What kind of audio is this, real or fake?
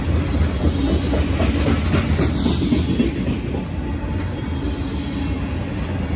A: real